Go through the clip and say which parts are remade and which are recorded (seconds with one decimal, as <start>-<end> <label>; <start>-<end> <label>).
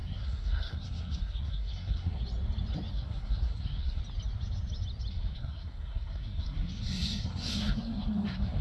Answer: 0.0-2.2 remade; 2.2-2.9 recorded; 2.9-4.0 remade; 4.0-5.1 recorded; 5.1-8.6 remade